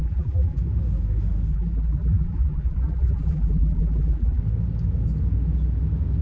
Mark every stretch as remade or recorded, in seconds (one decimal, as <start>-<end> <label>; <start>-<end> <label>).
0.0-0.6 remade; 0.6-1.5 recorded; 1.5-4.4 remade; 4.4-6.2 recorded

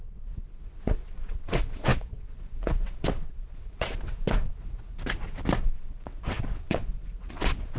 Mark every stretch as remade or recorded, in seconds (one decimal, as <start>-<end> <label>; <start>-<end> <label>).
0.0-4.9 remade; 4.9-5.6 recorded; 5.6-7.8 remade

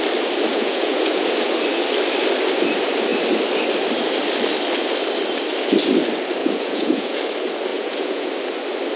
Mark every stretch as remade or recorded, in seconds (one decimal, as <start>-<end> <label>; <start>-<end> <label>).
0.0-0.5 recorded; 0.5-1.3 remade; 1.3-6.4 recorded; 6.4-7.2 remade; 7.2-7.7 recorded; 7.7-8.3 remade; 8.3-9.0 recorded

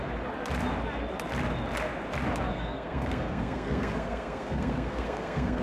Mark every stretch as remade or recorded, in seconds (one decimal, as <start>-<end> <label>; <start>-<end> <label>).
0.0-2.5 recorded; 2.5-5.6 remade